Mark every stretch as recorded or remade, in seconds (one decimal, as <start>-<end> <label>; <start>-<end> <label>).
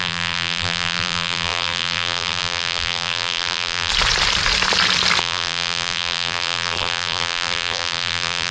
0.0-3.9 remade; 3.9-5.2 recorded; 5.2-8.5 remade